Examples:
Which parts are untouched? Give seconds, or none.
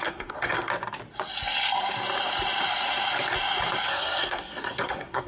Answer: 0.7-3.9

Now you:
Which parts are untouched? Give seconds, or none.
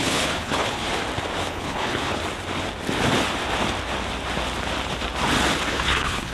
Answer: 1.0-1.5; 2.2-5.7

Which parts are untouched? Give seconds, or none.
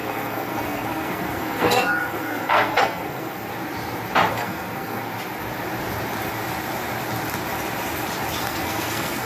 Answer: 3.5-4.3; 5.1-8.4